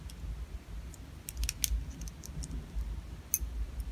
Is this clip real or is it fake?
real